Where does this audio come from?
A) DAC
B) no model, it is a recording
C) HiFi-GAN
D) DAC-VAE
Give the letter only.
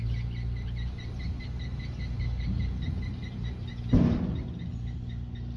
B